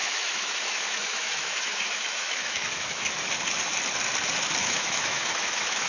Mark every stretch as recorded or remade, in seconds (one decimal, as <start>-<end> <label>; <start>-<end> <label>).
0.0-3.3 remade; 3.3-4.6 recorded; 4.6-5.9 remade